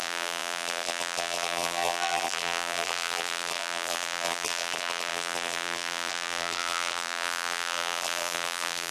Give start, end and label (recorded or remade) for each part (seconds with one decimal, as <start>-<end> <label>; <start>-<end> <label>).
0.0-8.9 remade